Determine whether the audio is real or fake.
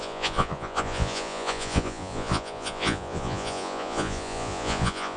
fake